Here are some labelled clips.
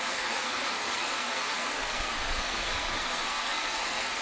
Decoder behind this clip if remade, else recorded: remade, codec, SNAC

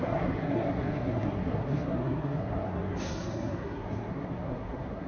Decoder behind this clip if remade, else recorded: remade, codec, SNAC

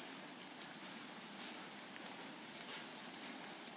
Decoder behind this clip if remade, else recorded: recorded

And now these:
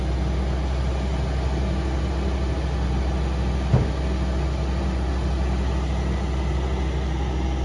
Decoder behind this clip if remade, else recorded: recorded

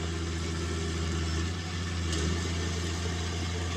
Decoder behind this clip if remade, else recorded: recorded